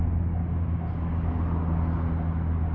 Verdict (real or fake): real